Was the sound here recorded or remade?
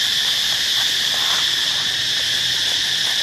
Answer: recorded